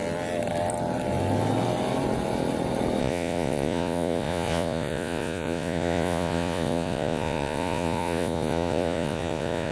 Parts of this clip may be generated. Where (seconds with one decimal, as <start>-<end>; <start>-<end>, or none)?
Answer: 3.0-9.7